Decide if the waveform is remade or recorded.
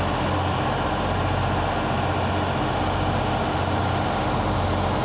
recorded